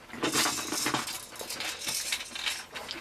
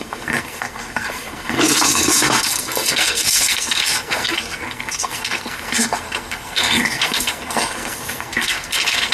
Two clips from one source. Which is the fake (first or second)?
second